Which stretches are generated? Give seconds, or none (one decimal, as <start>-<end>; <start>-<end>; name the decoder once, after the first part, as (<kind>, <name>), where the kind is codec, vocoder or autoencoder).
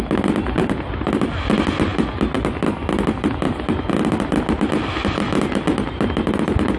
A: none